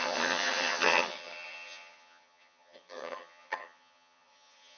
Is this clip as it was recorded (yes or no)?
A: no